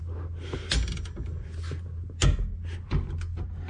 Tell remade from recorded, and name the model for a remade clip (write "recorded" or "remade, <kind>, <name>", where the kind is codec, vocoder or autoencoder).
recorded